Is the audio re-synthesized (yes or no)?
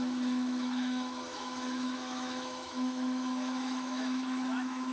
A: yes